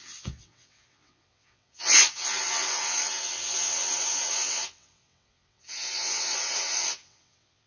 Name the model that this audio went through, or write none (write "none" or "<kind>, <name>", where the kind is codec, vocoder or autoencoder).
vocoder, WaveNeXt